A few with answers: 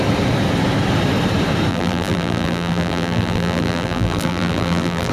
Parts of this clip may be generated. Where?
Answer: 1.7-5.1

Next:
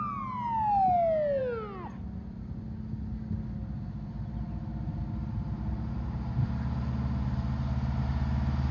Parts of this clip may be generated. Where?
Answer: 3.6-6.2

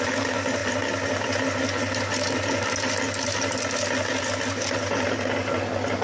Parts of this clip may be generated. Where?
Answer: none

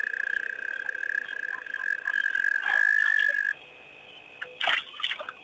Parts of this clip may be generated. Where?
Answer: none

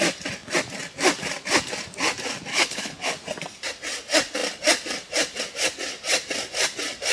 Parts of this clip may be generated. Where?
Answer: 2.5-3.1

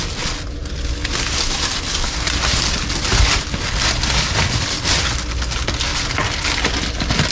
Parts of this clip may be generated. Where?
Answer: none

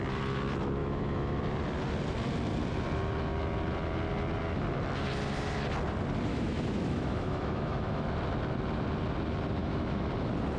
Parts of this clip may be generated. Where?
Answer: 0.8-1.4; 6.3-8.1; 9.6-10.1

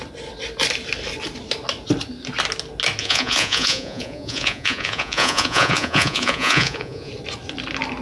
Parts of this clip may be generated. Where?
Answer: 3.0-7.1